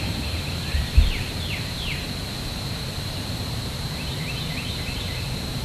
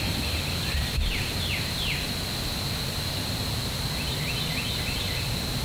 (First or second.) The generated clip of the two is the first